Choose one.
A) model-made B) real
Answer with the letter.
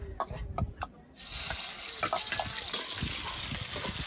B